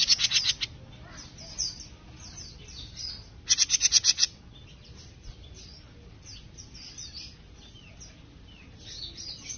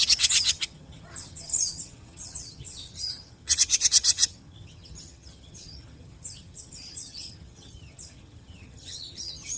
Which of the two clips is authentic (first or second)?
first